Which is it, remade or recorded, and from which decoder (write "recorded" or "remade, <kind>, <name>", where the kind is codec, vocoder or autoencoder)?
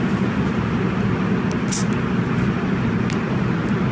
recorded